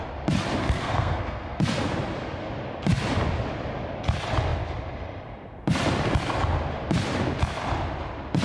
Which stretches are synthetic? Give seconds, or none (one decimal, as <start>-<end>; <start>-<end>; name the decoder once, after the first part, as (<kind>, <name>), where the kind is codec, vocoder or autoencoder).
0.6-1.6 (codec, SNAC)